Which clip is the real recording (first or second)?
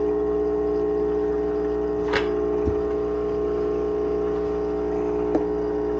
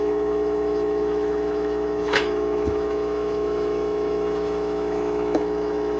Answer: first